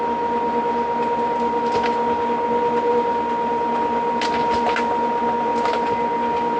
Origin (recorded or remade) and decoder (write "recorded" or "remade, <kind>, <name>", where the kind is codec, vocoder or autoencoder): recorded